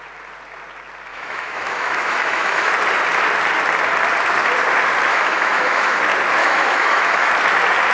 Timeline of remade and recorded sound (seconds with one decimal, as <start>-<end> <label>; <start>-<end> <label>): 0.0-1.1 recorded; 1.1-2.7 remade; 2.7-5.1 recorded; 5.1-6.0 remade; 6.0-6.4 recorded; 6.4-7.3 remade; 7.3-7.9 recorded